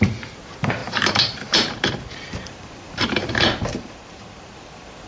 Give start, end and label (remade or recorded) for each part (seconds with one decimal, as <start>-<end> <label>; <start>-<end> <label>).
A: 0.0-5.1 remade